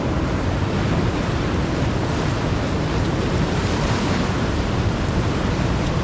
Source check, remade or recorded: remade